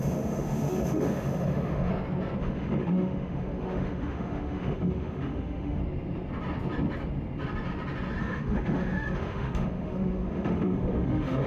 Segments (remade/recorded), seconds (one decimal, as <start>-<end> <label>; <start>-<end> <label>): 0.0-1.9 remade; 1.9-2.4 recorded; 2.4-5.8 remade; 5.8-8.2 recorded; 8.2-11.5 remade